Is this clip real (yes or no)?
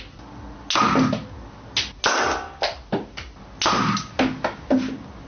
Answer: yes